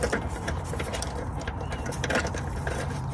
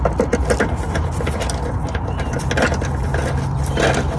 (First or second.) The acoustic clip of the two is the second